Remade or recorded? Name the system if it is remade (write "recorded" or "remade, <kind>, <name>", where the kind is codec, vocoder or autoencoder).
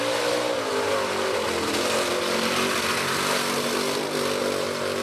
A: recorded